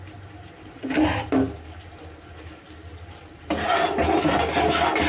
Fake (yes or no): no